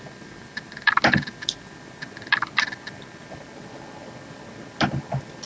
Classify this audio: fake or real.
real